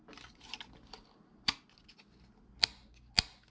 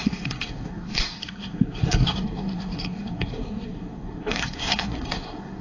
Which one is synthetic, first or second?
second